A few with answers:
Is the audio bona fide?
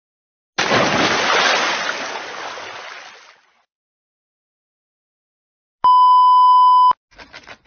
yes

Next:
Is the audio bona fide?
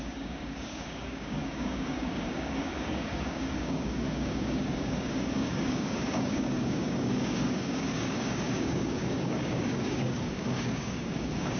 no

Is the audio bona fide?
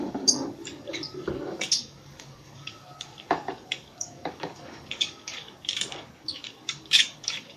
no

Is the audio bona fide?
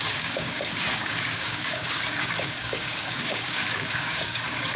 no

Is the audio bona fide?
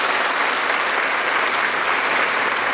yes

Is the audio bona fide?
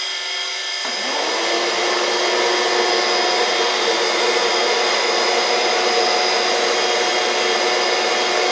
yes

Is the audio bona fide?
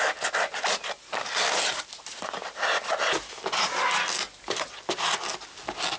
yes